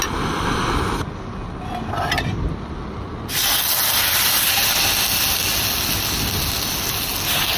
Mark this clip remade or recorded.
recorded